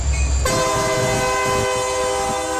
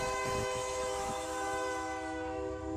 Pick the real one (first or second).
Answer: first